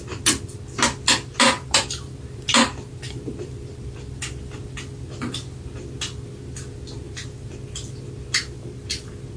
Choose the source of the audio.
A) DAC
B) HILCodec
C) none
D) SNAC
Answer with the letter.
C